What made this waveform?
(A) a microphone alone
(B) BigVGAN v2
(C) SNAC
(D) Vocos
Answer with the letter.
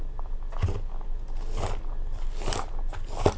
A